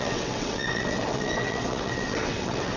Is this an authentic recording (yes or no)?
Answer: no